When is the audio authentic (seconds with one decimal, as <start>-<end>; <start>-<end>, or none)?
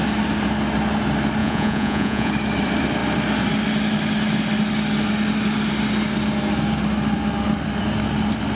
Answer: 0.0-1.4; 2.3-8.6